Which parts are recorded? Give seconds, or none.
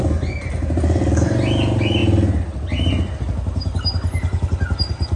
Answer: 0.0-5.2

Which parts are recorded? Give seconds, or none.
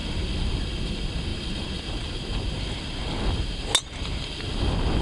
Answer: 0.0-5.0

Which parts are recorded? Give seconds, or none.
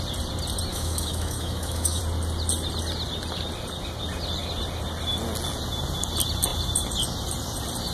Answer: 0.0-0.7; 2.0-7.9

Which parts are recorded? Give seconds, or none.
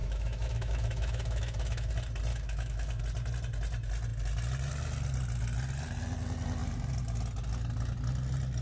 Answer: 1.9-2.3; 3.0-8.6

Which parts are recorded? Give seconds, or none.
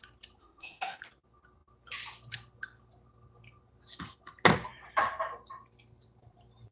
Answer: 0.0-0.4; 1.0-6.7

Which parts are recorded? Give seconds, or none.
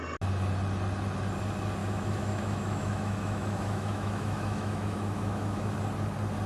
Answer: 0.0-1.8; 5.7-6.5